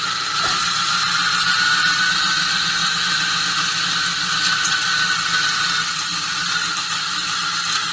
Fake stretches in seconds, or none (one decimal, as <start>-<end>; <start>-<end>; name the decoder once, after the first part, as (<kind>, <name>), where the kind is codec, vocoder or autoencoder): none